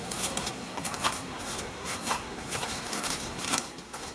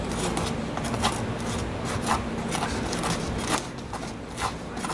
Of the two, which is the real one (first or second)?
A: second